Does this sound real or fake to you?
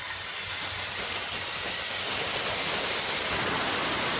real